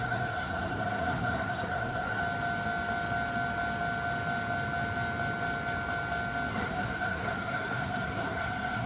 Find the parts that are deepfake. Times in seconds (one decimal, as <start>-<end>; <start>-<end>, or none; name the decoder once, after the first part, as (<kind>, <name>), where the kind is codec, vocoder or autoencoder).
0.0-2.2 (codec, SNAC); 6.5-8.9